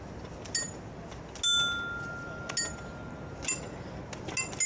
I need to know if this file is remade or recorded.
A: recorded